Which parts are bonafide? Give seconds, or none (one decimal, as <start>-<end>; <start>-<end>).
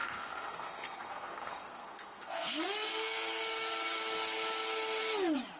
3.4-5.6